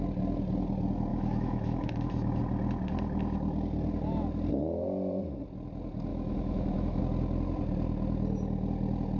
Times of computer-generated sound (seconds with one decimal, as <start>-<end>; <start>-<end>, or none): 1.1-2.4; 6.1-7.0